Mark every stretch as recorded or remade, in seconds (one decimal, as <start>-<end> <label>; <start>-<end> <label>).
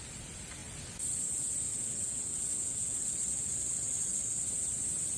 0.0-1.7 recorded; 1.7-4.8 remade; 4.8-5.2 recorded